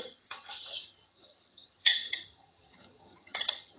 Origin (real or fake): fake